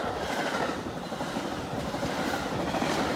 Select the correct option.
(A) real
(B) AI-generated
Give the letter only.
A